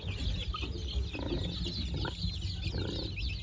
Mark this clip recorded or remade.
recorded